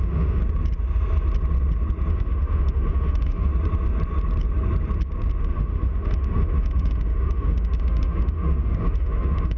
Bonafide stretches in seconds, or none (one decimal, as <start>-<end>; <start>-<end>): 0.4-2.1; 3.5-5.4